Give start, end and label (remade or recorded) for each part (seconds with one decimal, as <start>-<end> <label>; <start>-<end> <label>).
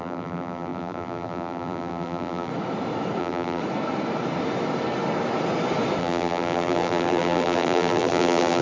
0.0-2.5 remade; 2.5-3.2 recorded; 3.2-3.6 remade; 3.6-6.0 recorded; 6.0-8.6 remade